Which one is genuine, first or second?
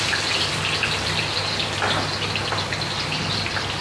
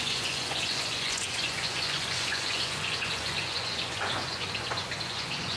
first